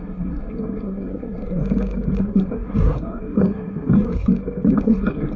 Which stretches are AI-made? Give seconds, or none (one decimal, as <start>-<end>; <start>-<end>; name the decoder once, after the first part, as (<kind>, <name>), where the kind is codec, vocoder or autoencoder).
0.0-1.6 (codec, SNAC); 2.2-4.3; 4.8-5.4